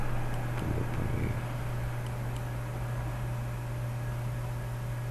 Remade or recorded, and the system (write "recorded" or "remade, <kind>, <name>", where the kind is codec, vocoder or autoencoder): recorded